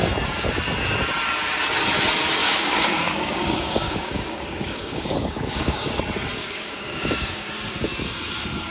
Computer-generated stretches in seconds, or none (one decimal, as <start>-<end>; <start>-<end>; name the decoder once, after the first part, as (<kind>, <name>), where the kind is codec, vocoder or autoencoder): 2.4-6.0 (codec, DAC); 6.4-7.5